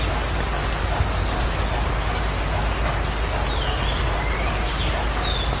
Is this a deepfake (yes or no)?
no